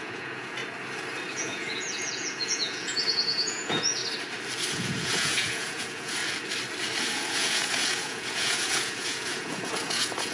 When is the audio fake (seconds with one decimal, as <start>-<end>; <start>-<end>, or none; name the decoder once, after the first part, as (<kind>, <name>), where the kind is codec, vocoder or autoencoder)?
0.0-0.6 (vocoder, Vocos); 1.3-4.0; 4.7-6.2; 7.0-10.3